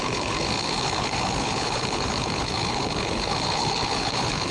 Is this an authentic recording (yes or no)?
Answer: no